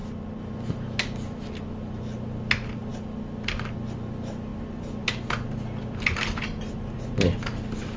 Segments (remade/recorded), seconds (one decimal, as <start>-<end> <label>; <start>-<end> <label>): 0.0-8.0 recorded